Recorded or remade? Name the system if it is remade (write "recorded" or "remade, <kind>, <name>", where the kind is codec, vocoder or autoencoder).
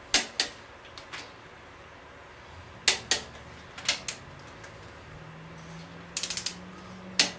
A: recorded